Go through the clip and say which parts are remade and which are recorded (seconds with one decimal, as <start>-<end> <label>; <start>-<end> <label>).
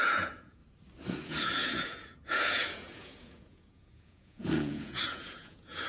0.0-0.6 remade; 0.6-1.1 recorded; 1.1-5.9 remade